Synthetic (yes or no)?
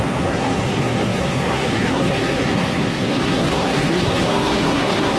yes